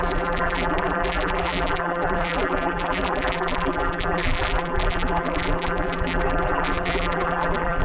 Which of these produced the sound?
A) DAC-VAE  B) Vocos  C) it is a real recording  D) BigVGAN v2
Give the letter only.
D